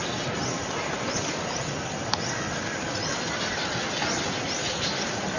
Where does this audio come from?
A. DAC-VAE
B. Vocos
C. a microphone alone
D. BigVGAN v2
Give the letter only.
C